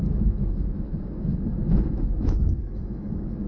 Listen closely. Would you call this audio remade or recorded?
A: remade